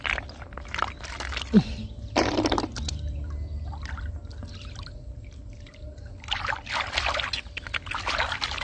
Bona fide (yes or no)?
yes